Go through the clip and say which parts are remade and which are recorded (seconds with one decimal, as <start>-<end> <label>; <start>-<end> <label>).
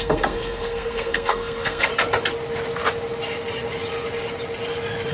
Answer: 0.0-1.9 remade; 1.9-5.1 recorded